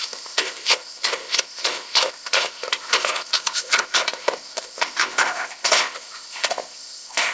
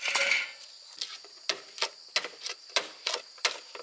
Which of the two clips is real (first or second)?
second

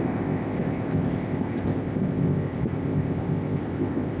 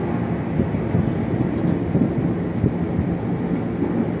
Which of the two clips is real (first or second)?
second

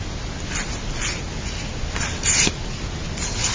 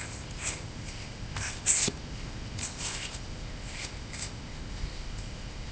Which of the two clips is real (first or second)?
first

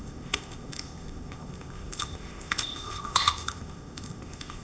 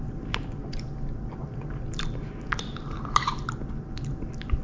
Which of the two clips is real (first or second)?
second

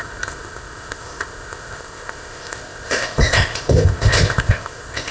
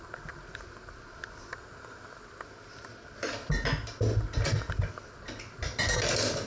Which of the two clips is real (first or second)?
second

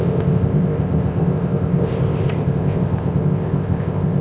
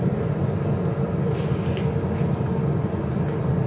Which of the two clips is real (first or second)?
second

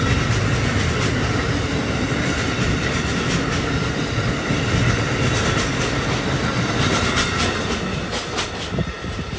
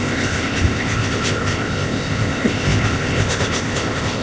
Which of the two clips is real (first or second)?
first